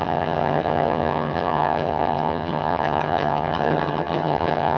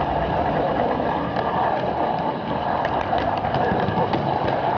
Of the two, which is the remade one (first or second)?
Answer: first